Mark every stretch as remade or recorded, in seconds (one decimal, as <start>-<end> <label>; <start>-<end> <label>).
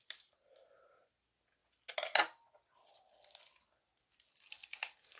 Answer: 0.0-5.2 recorded